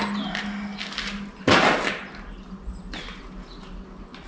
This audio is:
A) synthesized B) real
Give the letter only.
B